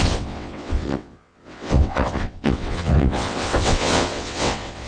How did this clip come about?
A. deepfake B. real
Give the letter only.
A